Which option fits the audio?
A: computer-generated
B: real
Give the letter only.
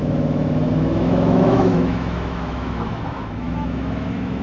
A